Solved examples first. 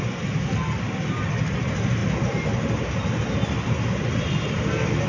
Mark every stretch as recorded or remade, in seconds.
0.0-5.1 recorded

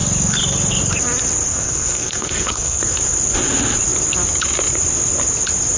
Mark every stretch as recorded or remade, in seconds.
0.0-1.5 recorded; 1.5-2.8 remade; 2.8-5.8 recorded